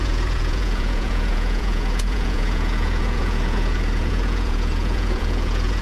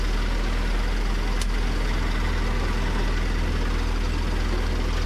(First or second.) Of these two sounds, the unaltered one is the second